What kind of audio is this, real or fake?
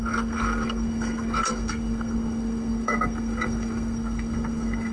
fake